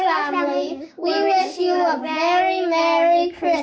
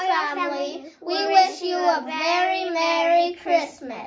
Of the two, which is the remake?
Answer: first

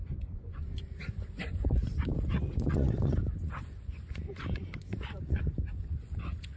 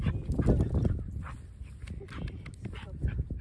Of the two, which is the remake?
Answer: first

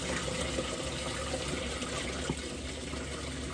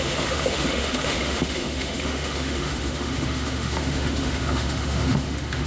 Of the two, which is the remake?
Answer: second